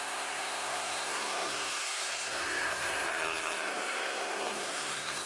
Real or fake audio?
fake